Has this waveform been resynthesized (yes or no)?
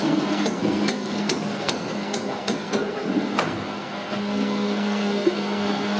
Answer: yes